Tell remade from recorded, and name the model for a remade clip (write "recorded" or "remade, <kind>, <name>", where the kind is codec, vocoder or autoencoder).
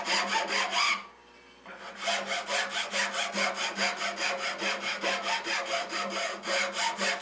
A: recorded